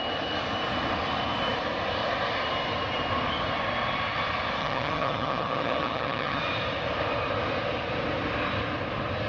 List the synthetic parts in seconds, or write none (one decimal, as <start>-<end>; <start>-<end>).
4.6-6.4